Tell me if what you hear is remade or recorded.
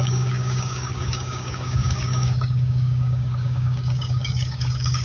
remade